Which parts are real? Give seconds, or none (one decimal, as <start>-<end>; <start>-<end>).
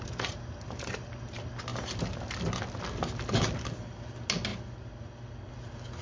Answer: 0.0-6.0